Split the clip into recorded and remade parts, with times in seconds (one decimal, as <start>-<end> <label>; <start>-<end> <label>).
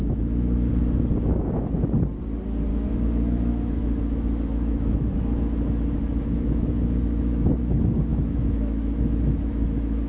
0.0-0.7 remade; 0.7-2.7 recorded; 2.7-7.6 remade; 7.6-8.1 recorded; 8.1-10.1 remade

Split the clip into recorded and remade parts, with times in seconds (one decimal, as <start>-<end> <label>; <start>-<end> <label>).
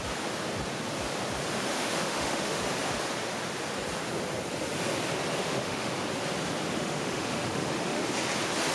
0.0-1.7 recorded; 1.7-2.6 remade; 2.6-5.4 recorded; 5.4-5.9 remade; 5.9-6.8 recorded; 6.8-8.0 remade; 8.0-8.7 recorded